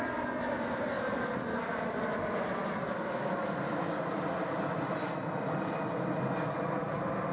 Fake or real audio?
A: real